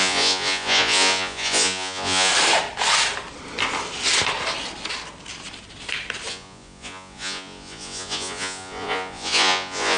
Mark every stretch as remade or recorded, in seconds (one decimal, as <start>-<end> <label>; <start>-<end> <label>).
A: 0.0-2.3 remade; 2.3-6.3 recorded; 6.3-10.0 remade